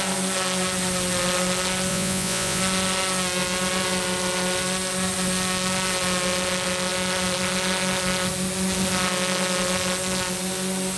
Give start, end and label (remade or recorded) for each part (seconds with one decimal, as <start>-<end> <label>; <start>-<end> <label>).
0.0-1.9 recorded; 1.9-2.6 remade; 2.6-11.0 recorded